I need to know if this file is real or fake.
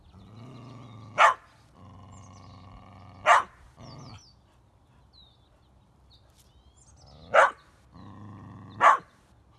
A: real